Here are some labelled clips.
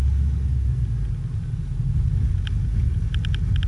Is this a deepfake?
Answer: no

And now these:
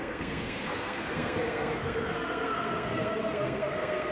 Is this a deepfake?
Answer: yes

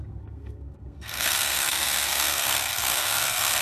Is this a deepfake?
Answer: yes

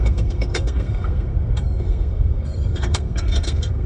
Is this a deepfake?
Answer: yes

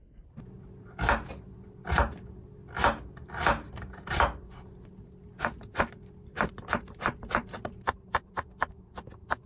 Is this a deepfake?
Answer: no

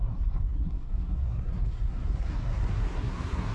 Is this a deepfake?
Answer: yes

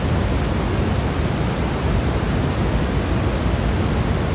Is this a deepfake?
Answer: no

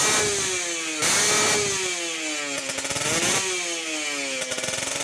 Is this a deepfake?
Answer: no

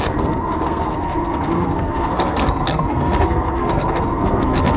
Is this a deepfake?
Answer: yes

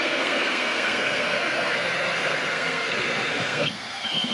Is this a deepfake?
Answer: yes